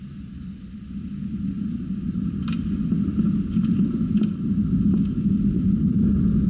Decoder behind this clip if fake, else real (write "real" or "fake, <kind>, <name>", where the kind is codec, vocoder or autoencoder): real